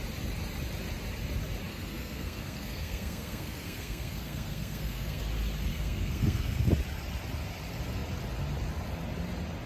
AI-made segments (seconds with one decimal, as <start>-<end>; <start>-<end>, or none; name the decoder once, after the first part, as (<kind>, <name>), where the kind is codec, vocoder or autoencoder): 1.7-5.2 (codec, SNAC); 5.7-6.7